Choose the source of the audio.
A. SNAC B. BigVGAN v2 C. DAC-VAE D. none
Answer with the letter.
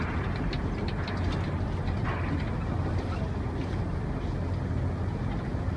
D